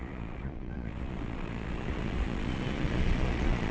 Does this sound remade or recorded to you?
remade